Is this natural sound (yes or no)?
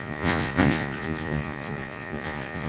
no